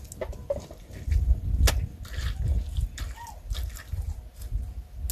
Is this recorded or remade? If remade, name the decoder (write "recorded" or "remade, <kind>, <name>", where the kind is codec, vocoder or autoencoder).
recorded